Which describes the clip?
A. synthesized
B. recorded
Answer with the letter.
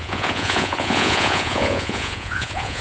A